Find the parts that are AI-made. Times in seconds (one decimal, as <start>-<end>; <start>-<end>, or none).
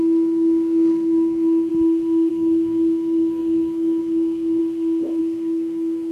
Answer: 0.0-1.7; 2.3-4.6; 5.2-6.1